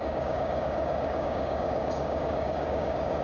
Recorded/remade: remade